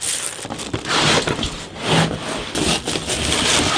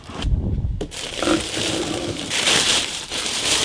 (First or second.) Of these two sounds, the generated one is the second